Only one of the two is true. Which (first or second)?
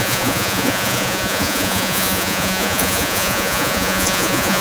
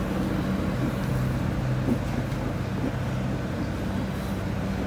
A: second